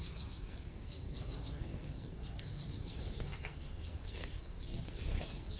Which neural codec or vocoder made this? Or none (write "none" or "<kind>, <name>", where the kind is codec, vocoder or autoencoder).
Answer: codec, SNAC